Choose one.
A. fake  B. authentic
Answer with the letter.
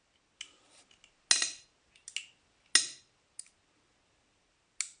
B